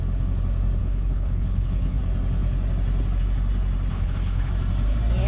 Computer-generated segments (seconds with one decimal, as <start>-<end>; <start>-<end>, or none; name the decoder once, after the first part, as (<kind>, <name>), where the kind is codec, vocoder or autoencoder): 0.8-2.0 (codec, HILCodec); 3.9-4.5